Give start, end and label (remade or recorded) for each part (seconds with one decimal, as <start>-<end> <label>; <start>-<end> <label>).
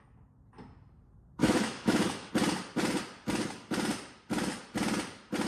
0.0-1.4 recorded; 1.4-2.3 remade; 2.3-5.5 recorded